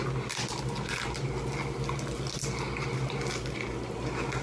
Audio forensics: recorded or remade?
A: recorded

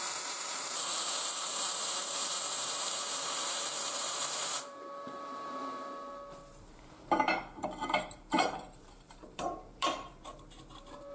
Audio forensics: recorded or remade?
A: remade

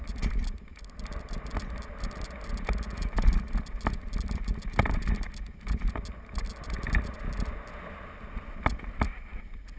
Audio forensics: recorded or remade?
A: recorded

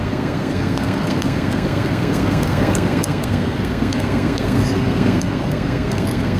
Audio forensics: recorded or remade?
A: remade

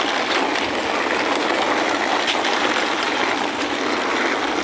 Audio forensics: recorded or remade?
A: recorded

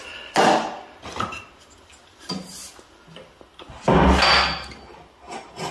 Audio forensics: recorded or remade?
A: recorded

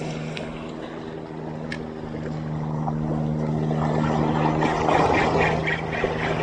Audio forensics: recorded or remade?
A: recorded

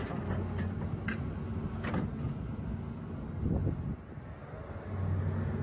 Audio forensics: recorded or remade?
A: recorded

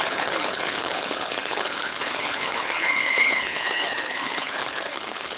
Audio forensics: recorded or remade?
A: remade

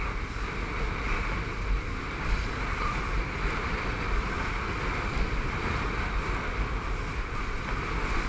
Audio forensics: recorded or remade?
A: recorded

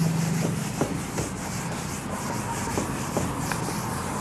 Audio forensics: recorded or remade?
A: recorded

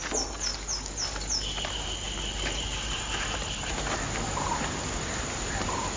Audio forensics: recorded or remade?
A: recorded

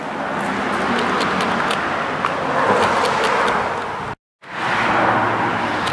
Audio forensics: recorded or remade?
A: recorded